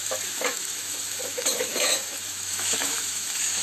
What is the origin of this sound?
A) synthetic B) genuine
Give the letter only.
A